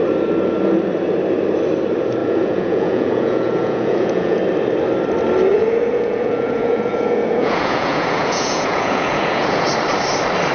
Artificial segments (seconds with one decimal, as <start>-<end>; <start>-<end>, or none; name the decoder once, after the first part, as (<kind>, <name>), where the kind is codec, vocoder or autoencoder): 2.2-4.4 (vocoder, Vocos); 5.5-9.7